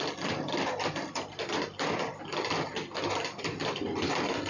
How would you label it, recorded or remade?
recorded